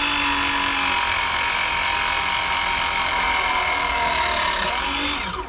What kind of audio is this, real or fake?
real